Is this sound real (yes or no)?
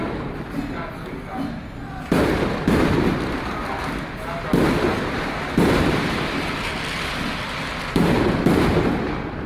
yes